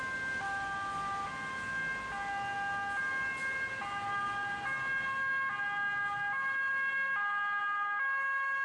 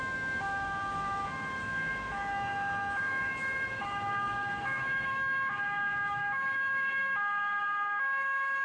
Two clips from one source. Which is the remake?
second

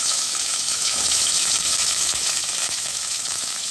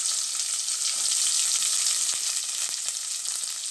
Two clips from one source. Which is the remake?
first